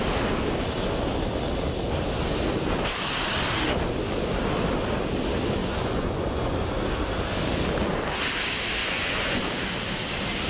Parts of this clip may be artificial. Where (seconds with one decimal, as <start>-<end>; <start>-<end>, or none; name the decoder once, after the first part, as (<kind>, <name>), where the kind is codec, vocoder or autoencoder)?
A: 5.6-6.8 (vocoder, Vocos); 8.8-9.4